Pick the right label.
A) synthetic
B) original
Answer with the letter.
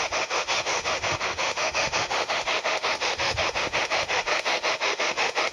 A